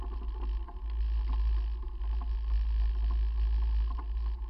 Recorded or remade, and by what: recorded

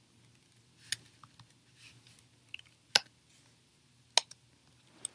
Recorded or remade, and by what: recorded